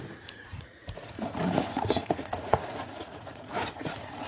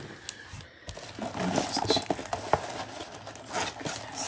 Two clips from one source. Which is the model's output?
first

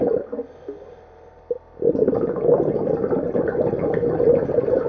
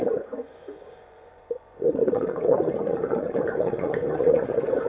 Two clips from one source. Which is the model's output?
second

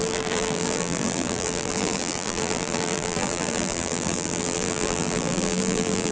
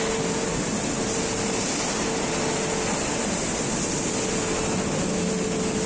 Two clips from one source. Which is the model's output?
first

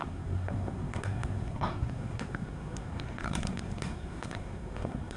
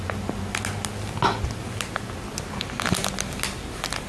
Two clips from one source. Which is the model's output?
first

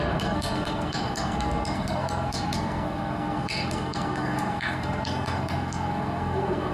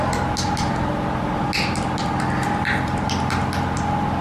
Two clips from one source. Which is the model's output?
first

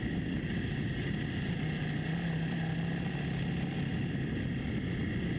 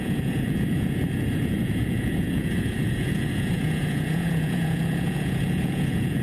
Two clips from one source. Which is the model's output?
second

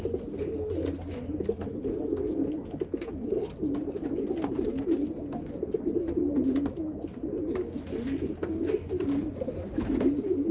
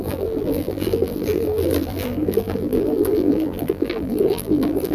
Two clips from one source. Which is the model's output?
second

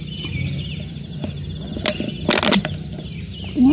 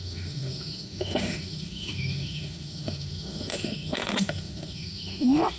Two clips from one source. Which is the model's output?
second